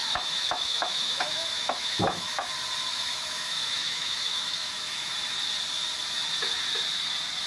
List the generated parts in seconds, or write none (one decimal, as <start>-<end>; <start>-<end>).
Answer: 0.0-2.5; 2.9-5.1